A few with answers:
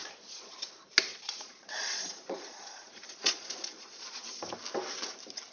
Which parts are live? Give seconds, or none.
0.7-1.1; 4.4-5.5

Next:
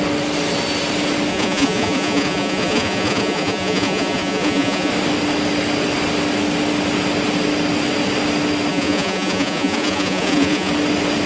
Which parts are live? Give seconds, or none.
0.0-1.3; 4.9-8.7; 10.7-11.3

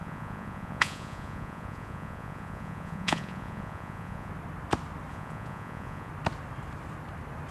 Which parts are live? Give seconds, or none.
4.3-5.1; 6.1-7.5

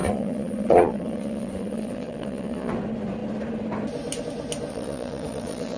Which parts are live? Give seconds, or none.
2.7-4.7

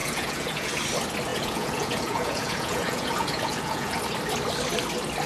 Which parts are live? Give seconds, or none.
0.7-1.3; 4.0-5.3